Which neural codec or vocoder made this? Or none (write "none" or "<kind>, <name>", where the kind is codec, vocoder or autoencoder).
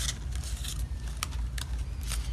none